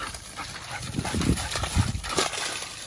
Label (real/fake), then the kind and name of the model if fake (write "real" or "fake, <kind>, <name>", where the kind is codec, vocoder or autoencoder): real